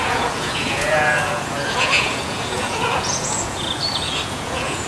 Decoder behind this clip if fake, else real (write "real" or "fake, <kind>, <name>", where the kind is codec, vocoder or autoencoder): fake, vocoder, Vocos